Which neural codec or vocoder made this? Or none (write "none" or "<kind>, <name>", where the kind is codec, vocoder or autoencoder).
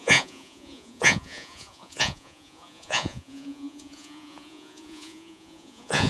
vocoder, Vocos